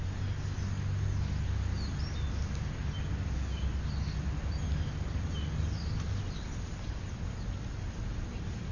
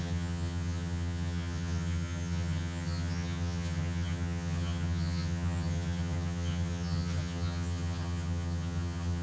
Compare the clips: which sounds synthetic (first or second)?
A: second